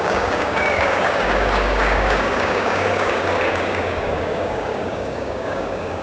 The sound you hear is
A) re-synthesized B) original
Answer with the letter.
A